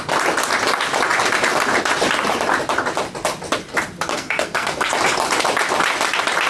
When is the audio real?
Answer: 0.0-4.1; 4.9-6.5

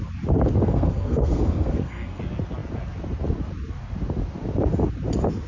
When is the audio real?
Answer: 0.0-0.6; 2.2-5.5

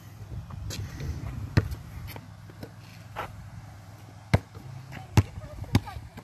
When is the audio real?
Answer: 0.0-6.2

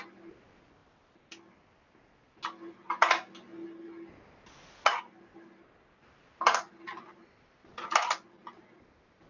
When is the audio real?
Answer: 0.0-9.3

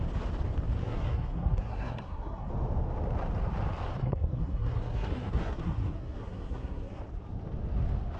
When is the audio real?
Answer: 0.0-0.8; 2.5-4.0; 7.0-8.2

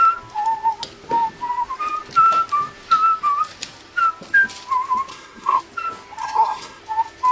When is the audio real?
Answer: 0.0-5.1; 5.6-6.2; 6.8-7.3

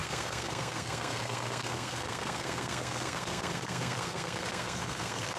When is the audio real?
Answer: none

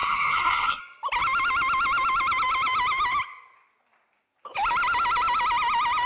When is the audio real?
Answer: 0.8-6.1